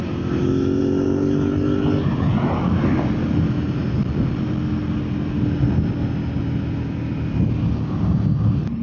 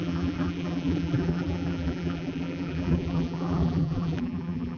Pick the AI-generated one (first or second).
second